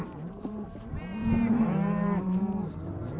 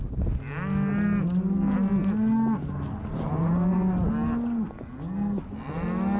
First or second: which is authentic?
second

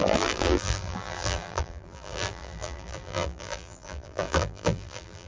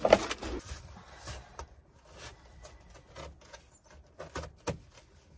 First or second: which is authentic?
second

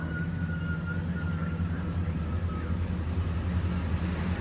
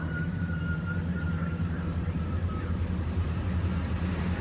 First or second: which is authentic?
first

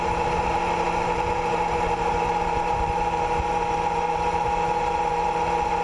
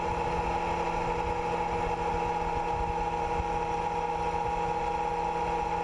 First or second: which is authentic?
second